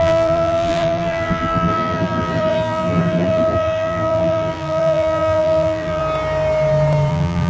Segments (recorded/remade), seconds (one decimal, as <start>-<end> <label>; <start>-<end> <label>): 0.0-6.0 remade; 6.0-7.1 recorded; 7.1-7.5 remade